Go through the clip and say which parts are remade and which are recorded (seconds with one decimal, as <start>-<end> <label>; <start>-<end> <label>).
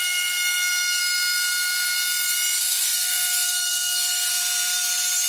0.0-1.0 remade; 1.0-2.6 recorded; 2.6-4.3 remade; 4.3-5.3 recorded